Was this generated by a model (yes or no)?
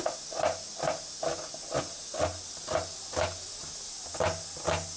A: no